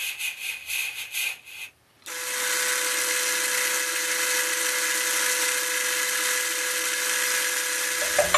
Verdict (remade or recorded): recorded